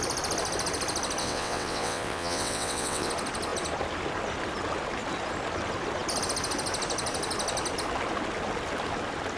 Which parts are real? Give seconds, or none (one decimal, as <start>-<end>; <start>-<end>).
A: 0.0-1.2; 3.1-9.4